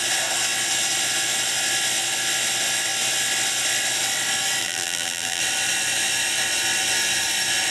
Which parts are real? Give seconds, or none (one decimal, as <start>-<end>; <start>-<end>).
0.0-4.6; 5.4-7.7